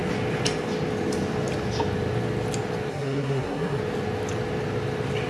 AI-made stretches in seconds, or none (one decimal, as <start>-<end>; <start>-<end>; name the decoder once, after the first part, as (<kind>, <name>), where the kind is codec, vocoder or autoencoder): 2.9-3.8 (codec, SNAC)